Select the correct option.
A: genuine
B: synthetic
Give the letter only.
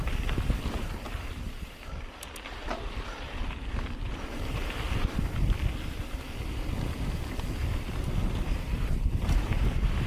B